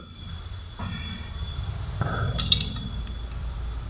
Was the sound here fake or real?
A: real